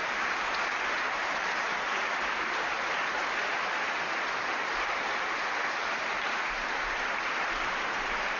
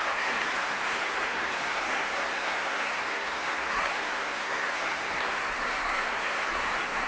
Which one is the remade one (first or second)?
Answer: second